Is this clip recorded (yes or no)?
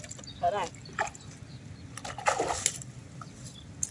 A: yes